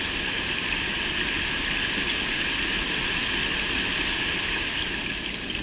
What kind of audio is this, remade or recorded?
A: recorded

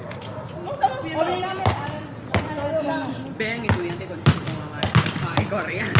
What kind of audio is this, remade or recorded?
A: recorded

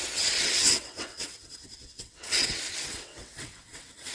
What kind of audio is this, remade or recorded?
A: remade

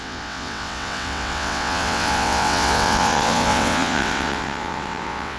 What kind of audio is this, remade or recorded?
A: remade